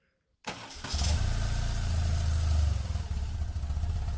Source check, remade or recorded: recorded